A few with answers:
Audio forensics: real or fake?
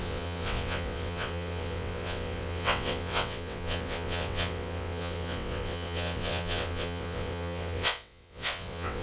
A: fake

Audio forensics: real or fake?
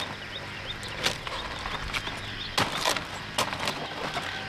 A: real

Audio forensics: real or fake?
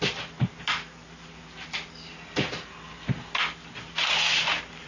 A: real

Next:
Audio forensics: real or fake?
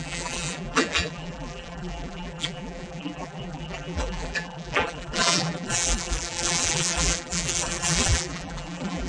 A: fake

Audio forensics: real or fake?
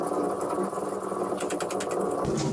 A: real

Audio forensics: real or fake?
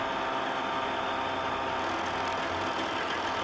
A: real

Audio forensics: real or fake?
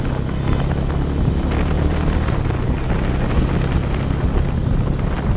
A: real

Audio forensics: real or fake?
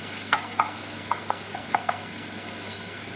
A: fake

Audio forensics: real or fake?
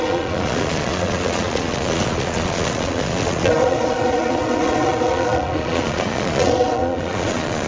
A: fake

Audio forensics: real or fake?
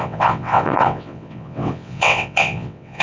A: fake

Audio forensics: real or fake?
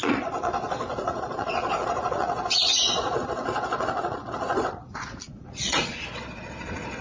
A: fake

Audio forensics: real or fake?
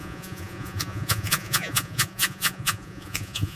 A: fake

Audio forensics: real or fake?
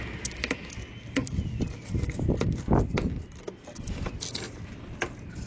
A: real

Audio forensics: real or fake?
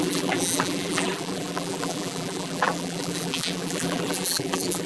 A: fake